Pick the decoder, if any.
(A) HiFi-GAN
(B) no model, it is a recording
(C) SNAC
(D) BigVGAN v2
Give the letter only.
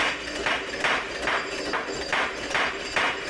B